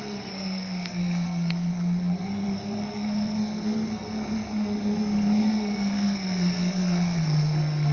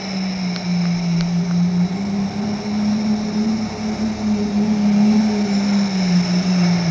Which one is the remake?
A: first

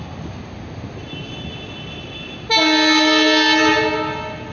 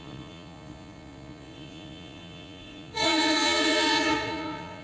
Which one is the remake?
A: second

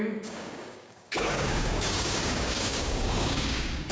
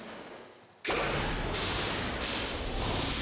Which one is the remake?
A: first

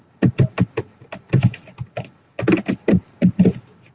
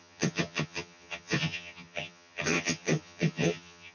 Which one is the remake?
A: second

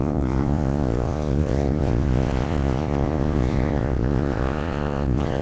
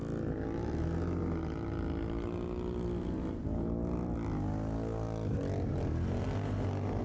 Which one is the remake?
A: first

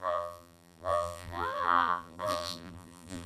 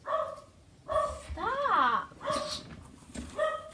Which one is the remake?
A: first